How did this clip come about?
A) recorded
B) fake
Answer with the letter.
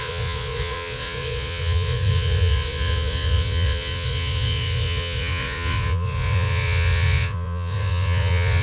B